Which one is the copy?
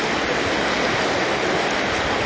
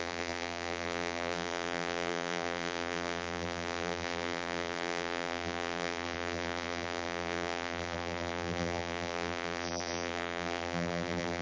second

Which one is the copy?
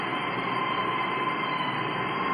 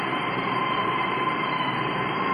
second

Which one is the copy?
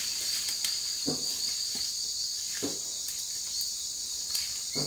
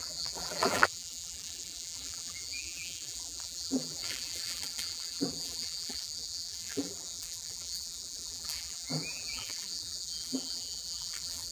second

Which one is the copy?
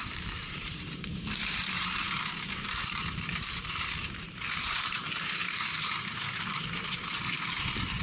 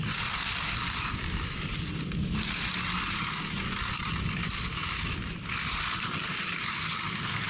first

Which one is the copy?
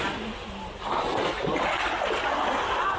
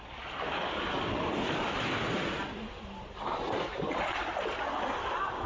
second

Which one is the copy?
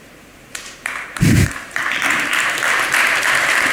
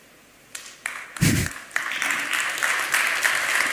first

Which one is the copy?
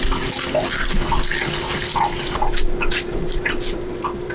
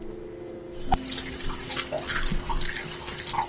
first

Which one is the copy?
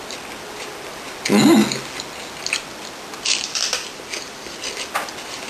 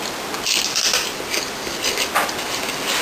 first